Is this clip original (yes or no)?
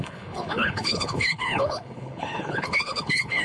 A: no